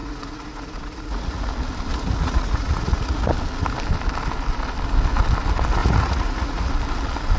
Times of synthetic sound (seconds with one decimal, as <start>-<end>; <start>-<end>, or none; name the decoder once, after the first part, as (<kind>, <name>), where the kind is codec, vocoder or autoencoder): 0.0-1.5 (vocoder, Vocos); 1.9-3.3; 5.8-6.7